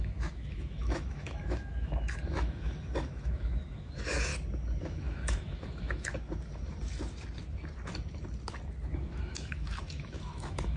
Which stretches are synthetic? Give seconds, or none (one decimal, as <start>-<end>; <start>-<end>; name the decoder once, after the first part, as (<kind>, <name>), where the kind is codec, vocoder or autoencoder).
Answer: 0.0-4.3 (autoencoder, DAC-VAE); 4.8-6.1; 8.9-10.8